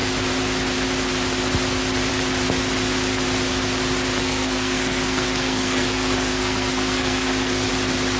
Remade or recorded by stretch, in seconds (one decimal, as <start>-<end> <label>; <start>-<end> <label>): 0.0-4.2 recorded; 4.2-7.7 remade; 7.7-8.2 recorded